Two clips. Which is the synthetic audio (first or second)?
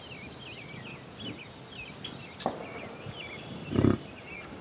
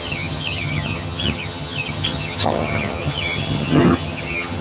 second